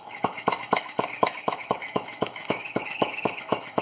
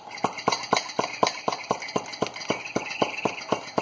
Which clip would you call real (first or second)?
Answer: second